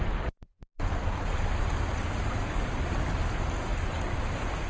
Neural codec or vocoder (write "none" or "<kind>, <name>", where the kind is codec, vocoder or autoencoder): none